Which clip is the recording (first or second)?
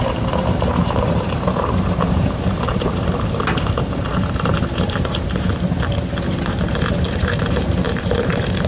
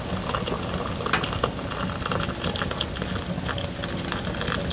second